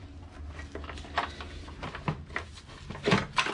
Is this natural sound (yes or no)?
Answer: yes